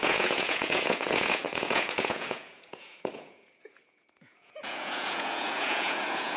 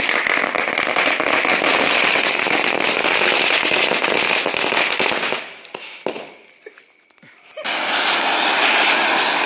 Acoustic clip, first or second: second